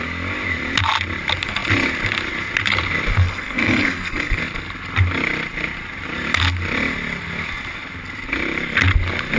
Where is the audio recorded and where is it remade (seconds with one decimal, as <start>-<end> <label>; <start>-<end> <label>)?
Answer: 0.0-3.1 recorded; 3.1-4.4 remade; 4.4-9.4 recorded